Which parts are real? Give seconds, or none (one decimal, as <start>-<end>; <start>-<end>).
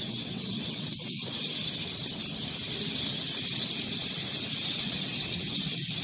1.2-4.8